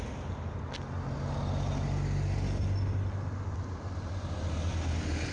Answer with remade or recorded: recorded